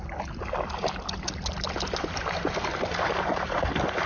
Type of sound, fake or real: real